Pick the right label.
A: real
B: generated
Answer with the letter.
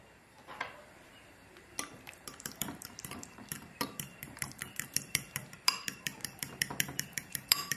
B